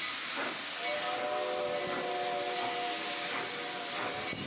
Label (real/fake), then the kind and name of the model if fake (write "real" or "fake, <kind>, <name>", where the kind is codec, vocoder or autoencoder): real